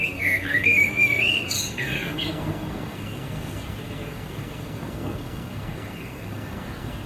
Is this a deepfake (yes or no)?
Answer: yes